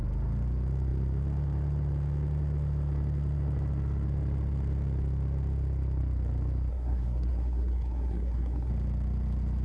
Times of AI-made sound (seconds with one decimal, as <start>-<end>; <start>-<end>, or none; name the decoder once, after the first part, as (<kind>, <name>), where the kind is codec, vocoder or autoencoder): 6.7-8.7 (codec, SNAC)